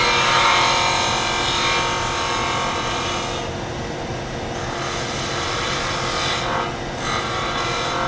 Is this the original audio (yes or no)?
yes